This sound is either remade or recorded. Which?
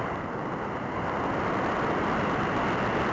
recorded